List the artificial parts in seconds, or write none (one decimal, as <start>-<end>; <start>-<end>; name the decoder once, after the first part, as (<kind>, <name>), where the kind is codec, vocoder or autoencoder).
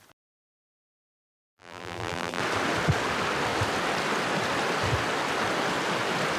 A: 1.2-2.4 (vocoder, BigVGAN v2)